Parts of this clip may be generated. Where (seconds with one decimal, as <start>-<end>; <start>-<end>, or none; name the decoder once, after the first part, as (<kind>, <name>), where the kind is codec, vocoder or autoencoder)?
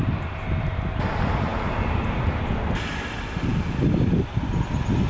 none